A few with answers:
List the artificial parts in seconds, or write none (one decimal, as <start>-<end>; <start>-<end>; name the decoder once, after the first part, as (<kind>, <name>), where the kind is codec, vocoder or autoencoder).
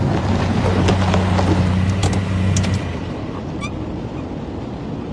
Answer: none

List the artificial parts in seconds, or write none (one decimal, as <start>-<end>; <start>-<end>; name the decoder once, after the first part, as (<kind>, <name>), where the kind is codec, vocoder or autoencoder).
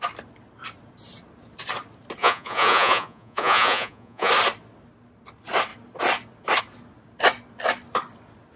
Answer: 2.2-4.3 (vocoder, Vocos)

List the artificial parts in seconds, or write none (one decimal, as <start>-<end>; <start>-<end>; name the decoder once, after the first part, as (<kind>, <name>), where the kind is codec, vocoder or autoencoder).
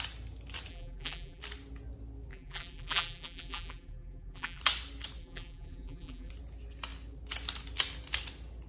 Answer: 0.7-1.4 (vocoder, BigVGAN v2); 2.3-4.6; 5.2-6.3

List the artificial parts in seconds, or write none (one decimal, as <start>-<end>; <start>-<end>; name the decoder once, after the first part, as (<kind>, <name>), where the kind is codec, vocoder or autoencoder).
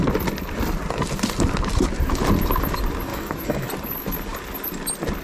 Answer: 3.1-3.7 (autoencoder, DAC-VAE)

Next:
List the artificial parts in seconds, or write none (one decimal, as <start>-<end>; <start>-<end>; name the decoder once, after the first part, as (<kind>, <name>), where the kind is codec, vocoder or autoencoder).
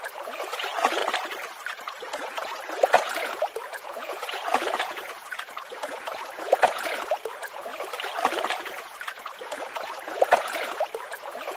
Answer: 0.0-1.0 (vocoder, Vocos); 1.7-7.7; 8.6-11.6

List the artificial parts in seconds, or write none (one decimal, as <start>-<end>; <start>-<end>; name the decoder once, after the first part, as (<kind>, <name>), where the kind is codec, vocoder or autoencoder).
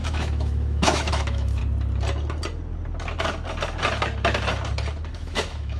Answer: 0.0-1.6 (autoencoder, DAC-VAE); 5.1-5.8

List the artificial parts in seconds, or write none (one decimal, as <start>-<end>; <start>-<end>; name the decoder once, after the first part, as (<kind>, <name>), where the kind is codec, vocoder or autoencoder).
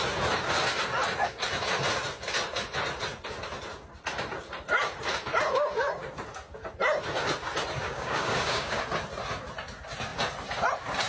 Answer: 7.8-8.8 (codec, DAC)